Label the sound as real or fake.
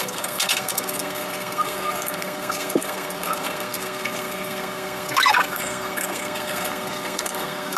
fake